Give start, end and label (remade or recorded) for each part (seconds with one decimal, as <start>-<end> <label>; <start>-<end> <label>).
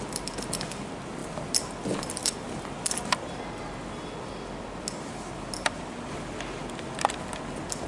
0.0-7.9 recorded